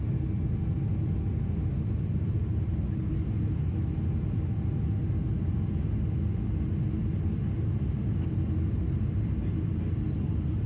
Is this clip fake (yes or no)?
no